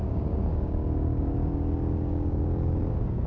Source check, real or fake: fake